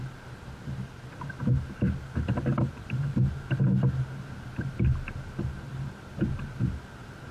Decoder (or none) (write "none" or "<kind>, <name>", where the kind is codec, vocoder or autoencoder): none